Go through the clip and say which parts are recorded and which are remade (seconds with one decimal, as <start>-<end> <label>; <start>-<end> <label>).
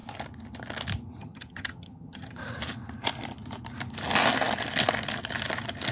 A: 0.0-1.2 recorded; 1.2-2.4 remade; 2.4-5.9 recorded